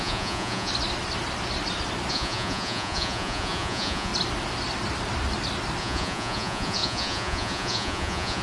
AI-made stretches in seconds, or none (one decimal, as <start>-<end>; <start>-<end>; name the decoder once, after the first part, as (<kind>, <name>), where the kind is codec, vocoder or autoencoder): 0.0-0.7 (vocoder, Vocos); 2.1-4.1; 5.8-8.4